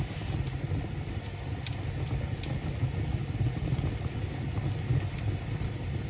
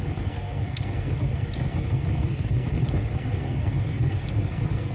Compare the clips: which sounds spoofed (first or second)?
second